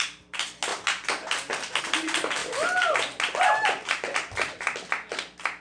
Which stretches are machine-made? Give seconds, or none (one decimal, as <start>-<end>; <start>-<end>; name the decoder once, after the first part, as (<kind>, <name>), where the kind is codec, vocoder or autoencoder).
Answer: none